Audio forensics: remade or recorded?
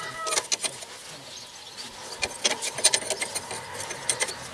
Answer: recorded